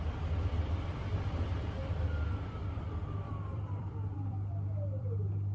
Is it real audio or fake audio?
fake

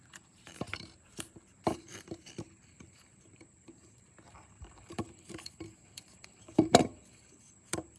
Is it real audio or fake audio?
fake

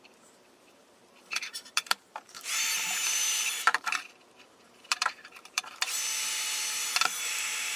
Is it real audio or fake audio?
fake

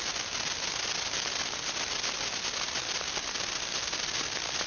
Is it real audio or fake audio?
real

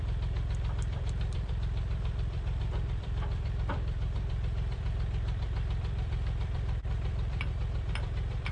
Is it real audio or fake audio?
fake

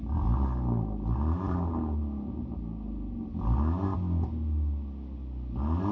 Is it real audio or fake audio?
real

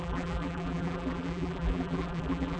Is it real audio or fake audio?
fake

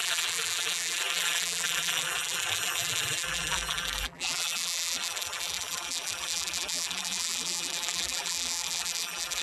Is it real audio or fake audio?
fake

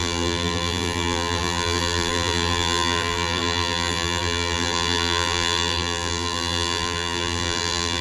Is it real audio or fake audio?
fake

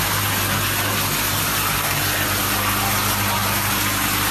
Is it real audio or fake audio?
real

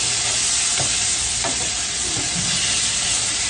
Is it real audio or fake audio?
real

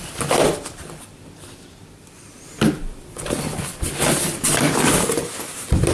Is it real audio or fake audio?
fake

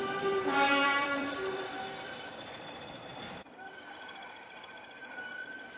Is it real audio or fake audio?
fake